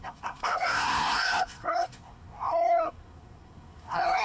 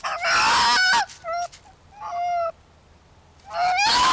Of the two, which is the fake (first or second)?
first